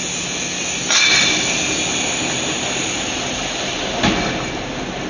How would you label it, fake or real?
real